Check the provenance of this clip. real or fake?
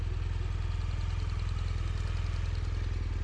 real